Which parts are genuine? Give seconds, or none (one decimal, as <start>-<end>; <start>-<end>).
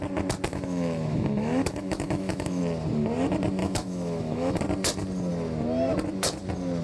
0.0-0.5; 2.6-3.6; 4.6-6.8